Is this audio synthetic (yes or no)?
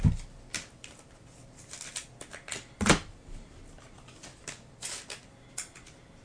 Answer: no